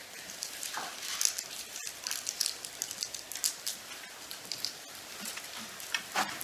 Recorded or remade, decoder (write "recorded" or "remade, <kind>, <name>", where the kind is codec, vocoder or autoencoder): remade, vocoder, BigVGAN v2